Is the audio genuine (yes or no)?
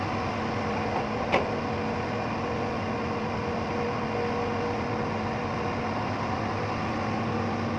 yes